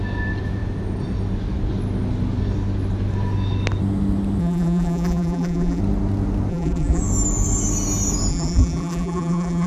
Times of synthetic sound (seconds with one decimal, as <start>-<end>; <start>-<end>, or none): 4.4-5.8; 6.5-7.0; 8.3-9.7